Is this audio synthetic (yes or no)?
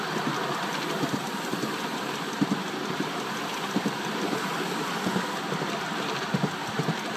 no